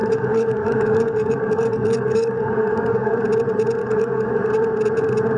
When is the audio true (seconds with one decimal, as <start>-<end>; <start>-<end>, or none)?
3.2-3.8; 4.4-5.4

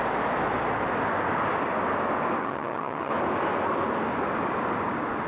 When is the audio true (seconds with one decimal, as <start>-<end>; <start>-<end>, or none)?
0.0-2.4; 3.1-5.3

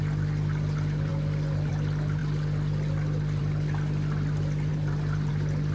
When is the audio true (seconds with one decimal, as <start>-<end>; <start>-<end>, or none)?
0.0-4.7; 5.3-5.7

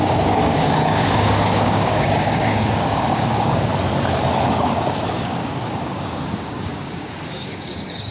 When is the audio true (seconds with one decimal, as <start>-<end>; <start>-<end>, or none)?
3.7-4.5